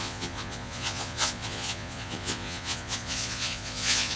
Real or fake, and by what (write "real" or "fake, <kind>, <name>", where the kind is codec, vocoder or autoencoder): fake, vocoder, Vocos